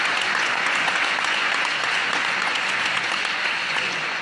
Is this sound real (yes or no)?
no